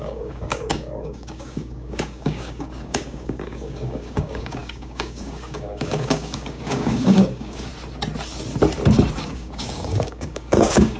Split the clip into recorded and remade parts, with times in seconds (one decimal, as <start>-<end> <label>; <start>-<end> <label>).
0.0-7.7 remade; 7.7-9.2 recorded; 9.2-11.0 remade